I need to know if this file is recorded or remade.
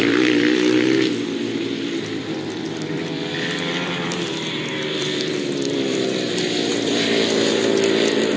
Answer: remade